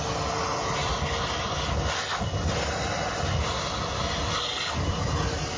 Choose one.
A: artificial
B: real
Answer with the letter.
B